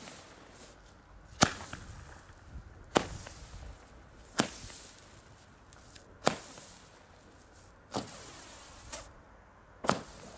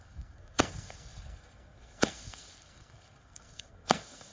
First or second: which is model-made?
second